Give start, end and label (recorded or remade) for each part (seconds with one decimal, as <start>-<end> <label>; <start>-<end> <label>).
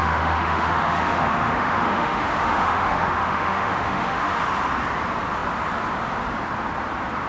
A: 0.0-4.4 remade; 4.4-7.3 recorded